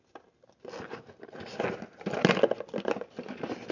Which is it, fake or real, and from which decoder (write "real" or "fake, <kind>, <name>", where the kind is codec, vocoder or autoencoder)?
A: real